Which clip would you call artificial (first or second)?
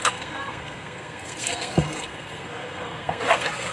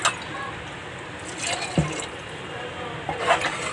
first